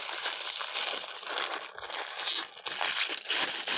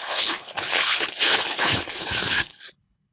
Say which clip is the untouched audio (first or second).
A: first